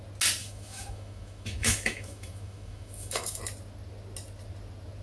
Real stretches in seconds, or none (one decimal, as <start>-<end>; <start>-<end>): 0.0-0.4; 3.4-5.0

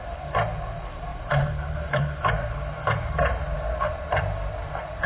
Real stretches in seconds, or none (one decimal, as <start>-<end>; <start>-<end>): 0.0-1.1; 4.2-5.1